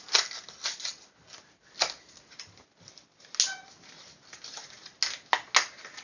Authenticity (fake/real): real